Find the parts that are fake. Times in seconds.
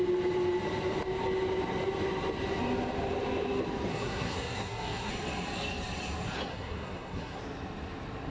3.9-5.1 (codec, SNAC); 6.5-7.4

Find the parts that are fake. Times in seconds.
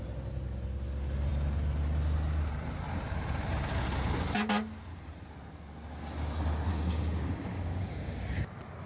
6.7-8.2 (codec, DAC)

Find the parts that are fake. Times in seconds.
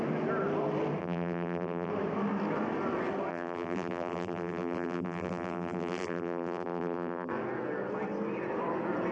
1.0-1.9 (vocoder, BigVGAN v2); 3.3-7.3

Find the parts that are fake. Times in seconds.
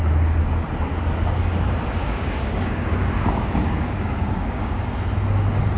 2.0-4.8 (codec, DAC)